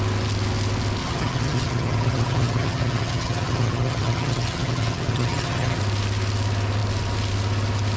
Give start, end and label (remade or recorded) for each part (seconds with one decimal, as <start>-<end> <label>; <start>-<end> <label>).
0.0-1.0 recorded; 1.0-5.8 remade; 5.8-8.0 recorded

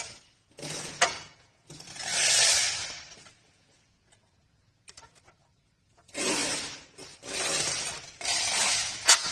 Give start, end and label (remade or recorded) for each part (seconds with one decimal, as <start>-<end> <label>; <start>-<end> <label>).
0.0-2.1 remade; 2.1-3.2 recorded; 3.2-6.4 remade; 6.4-8.7 recorded; 8.7-9.3 remade

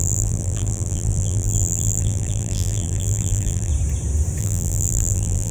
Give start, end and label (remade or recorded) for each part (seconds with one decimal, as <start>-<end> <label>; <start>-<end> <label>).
0.0-3.7 remade; 3.7-4.4 recorded; 4.4-5.5 remade

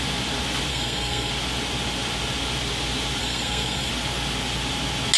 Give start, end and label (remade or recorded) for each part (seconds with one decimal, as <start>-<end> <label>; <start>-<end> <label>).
0.0-0.7 recorded; 0.7-1.3 remade; 1.3-3.2 recorded; 3.2-3.9 remade; 3.9-5.2 recorded